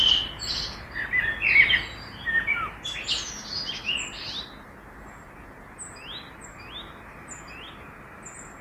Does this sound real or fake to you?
real